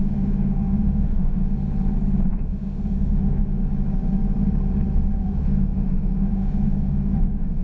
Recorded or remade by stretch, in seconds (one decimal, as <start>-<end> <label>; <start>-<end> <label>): 0.0-1.4 remade; 1.4-2.3 recorded; 2.3-3.6 remade; 3.6-5.2 recorded; 5.2-7.6 remade